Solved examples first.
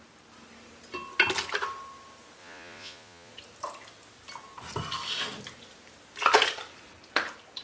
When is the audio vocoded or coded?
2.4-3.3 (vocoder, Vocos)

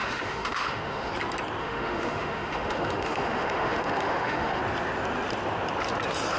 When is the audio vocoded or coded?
0.0-1.1 (autoencoder, DAC-VAE); 1.6-4.6

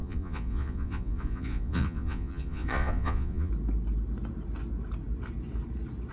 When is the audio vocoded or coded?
0.0-3.5 (vocoder, Vocos)